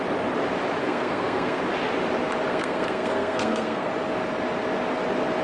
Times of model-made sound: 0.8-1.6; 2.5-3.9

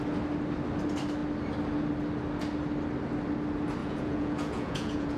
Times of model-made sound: 3.8-5.2

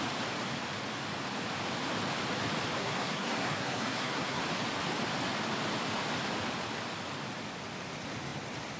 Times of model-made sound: 2.8-4.4

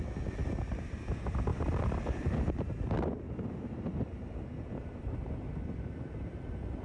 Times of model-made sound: 0.4-1.0; 1.5-5.6

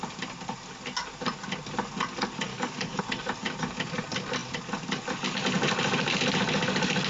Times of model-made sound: 2.5-3.0

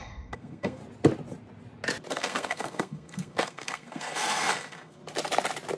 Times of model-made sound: 0.0-0.8; 2.1-5.0

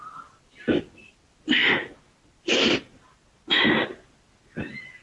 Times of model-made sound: none